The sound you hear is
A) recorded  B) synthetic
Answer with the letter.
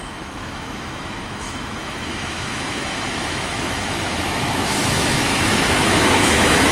B